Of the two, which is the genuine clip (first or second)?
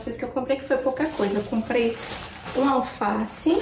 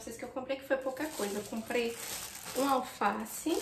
second